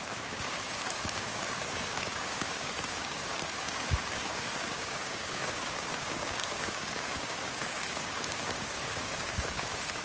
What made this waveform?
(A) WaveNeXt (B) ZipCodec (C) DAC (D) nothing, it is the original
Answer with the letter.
C